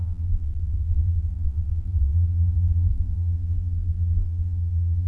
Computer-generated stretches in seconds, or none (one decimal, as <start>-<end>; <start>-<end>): 0.0-5.1